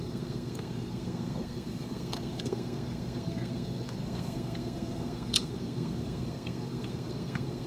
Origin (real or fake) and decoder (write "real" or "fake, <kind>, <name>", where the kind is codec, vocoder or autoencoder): fake, codec, SNAC